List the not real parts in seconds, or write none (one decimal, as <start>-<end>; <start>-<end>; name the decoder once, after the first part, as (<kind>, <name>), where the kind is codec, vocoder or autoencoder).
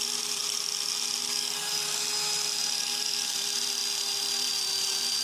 0.0-0.4 (vocoder, BigVGAN v2); 3.0-3.8; 4.3-5.2